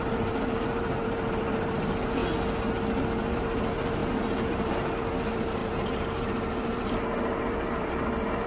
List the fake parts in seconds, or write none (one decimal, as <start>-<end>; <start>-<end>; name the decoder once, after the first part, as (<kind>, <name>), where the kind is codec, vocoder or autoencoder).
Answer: 0.0-2.2 (vocoder, BigVGAN v2); 3.3-8.5

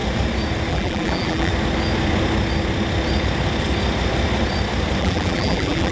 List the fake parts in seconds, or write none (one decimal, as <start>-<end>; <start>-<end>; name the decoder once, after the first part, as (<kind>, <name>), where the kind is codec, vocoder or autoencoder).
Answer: 0.7-1.5 (vocoder, BigVGAN v2); 5.0-5.9

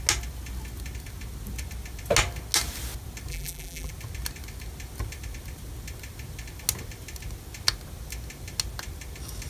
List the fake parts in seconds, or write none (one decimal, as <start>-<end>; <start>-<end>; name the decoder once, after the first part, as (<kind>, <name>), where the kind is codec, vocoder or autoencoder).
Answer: 3.3-3.9 (vocoder, BigVGAN v2)

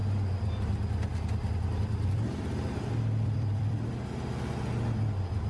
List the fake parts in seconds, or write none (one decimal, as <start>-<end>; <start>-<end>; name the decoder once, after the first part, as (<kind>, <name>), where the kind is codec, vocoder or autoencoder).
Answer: 1.1-3.9 (vocoder, BigVGAN v2)

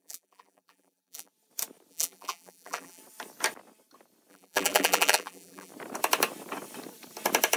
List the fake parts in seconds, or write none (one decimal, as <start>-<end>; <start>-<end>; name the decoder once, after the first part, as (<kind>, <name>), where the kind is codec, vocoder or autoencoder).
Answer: 0.0-1.3 (vocoder, BigVGAN v2); 1.9-3.0; 4.3-5.7